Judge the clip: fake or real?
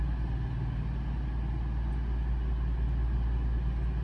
real